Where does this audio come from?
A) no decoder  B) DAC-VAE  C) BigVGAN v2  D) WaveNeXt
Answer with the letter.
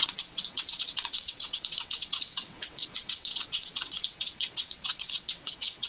D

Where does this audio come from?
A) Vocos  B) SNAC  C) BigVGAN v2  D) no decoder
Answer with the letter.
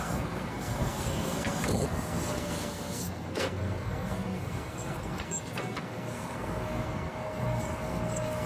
B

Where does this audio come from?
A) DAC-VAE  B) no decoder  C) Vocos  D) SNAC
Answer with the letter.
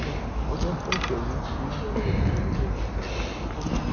B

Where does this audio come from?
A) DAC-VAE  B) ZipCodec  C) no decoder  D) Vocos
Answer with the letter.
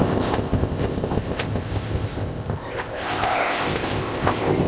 B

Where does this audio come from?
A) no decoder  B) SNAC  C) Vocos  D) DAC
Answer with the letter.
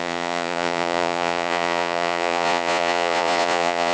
C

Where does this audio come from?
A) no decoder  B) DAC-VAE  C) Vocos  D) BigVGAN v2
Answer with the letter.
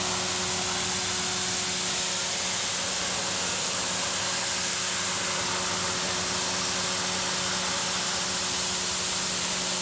A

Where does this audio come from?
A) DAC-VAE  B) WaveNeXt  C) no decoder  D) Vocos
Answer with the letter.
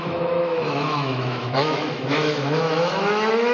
A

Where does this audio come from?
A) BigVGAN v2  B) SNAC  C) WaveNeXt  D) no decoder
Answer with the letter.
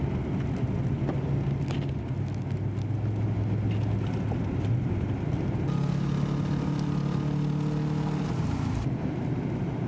D